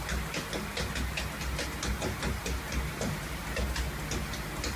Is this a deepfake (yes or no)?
no